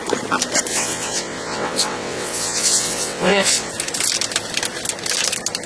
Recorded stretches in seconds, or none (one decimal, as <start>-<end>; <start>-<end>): 0.0-0.7; 3.7-5.7